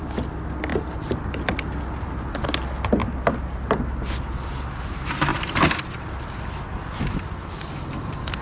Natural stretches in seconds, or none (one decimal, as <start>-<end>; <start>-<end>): 0.0-5.3; 6.2-8.4